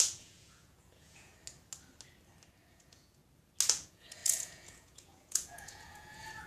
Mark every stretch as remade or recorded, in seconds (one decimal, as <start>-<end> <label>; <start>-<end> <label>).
0.0-1.3 remade; 1.3-2.7 recorded; 2.7-3.2 remade; 3.2-3.7 recorded; 3.7-6.5 remade